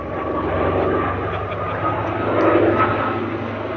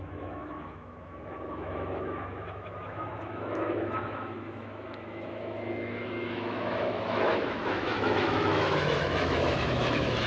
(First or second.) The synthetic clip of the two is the second